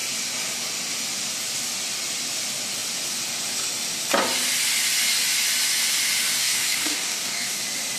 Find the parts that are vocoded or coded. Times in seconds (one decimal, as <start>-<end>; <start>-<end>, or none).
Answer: 6.4-7.6